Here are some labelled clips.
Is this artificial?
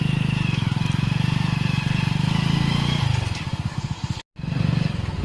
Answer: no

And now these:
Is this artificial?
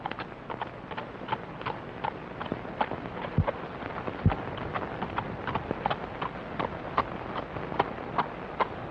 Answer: no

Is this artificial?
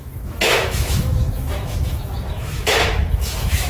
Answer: yes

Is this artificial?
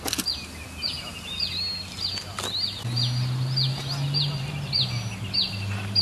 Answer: no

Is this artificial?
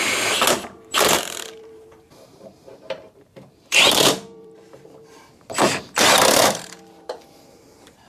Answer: yes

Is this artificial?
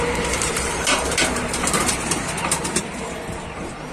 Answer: yes